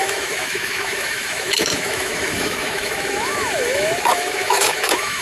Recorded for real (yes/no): no